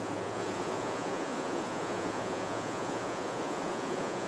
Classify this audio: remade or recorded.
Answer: remade